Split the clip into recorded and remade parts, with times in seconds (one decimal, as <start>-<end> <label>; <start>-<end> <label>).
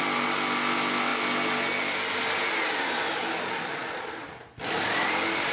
0.0-5.5 recorded